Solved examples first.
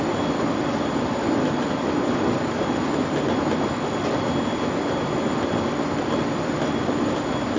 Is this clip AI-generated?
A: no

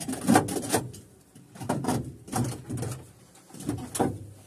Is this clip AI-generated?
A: no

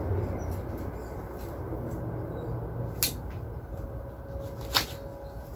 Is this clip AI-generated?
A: no